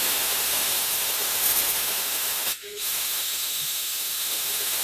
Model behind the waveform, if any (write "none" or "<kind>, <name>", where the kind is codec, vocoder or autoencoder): autoencoder, DAC-VAE